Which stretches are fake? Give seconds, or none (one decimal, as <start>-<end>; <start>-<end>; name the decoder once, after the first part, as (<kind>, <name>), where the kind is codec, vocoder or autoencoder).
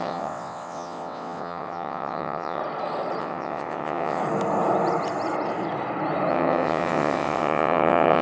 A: 0.0-2.6 (vocoder, WaveNeXt); 3.2-4.2; 6.3-8.2